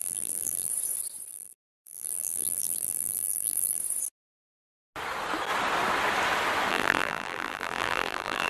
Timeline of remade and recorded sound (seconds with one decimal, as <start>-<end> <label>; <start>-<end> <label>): 0.0-0.7 remade; 0.7-1.3 recorded; 1.3-3.8 remade; 3.8-6.7 recorded; 6.7-8.5 remade